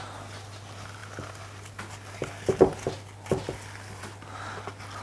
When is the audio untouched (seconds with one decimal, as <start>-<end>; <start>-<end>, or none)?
0.0-5.0